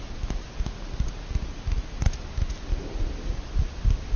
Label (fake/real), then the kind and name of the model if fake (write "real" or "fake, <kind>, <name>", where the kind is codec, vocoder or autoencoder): real